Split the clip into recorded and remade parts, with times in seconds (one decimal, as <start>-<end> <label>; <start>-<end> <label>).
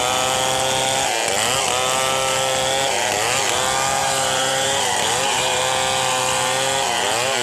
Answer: 0.0-4.0 recorded; 4.0-5.6 remade; 5.6-7.4 recorded